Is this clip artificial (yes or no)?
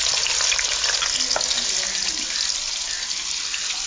no